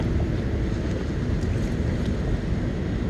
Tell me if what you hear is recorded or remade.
recorded